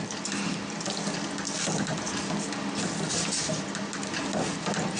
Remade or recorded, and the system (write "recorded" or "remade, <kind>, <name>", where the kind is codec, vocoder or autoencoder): recorded